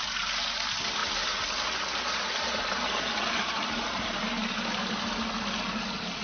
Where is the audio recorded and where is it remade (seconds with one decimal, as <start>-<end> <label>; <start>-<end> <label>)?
0.0-6.2 recorded